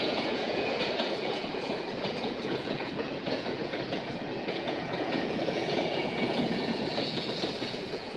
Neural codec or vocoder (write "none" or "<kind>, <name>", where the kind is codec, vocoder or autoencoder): vocoder, Vocos